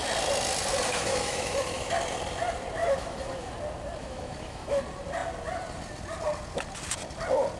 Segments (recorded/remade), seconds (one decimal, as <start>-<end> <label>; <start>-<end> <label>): 0.0-0.9 recorded; 0.9-1.9 remade; 1.9-2.8 recorded; 2.8-3.5 remade; 3.5-4.0 recorded; 4.0-4.8 remade; 4.8-7.6 recorded